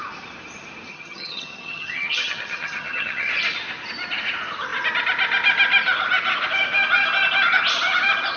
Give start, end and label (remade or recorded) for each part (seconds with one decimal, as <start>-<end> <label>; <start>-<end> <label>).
0.0-0.9 recorded; 0.9-3.3 remade; 3.3-8.4 recorded